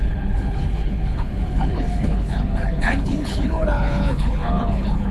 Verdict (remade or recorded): remade